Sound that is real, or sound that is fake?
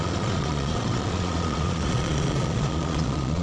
fake